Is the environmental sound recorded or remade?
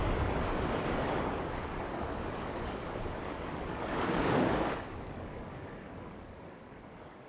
remade